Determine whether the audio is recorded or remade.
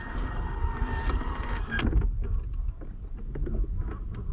recorded